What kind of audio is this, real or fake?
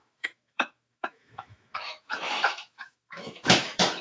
fake